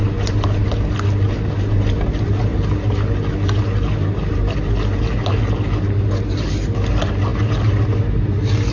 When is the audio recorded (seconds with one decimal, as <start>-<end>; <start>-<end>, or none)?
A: 0.0-8.7